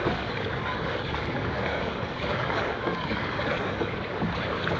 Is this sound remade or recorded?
remade